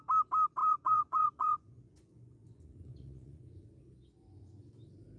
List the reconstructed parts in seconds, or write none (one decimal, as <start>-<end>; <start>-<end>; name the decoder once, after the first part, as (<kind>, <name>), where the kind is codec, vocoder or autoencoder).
0.6-3.7 (vocoder, Vocos)